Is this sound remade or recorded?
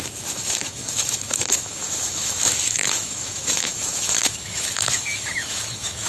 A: remade